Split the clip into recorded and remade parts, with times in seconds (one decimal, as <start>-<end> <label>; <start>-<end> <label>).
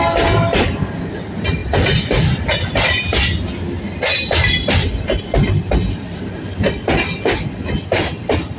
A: 0.0-8.6 recorded